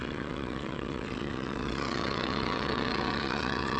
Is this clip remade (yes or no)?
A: yes